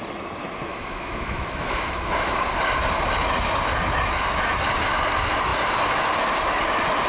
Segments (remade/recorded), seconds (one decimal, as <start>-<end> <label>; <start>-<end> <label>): 0.0-0.7 recorded; 0.7-2.4 remade; 2.4-7.1 recorded